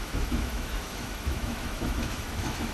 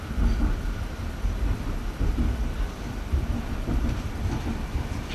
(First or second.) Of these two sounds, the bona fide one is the second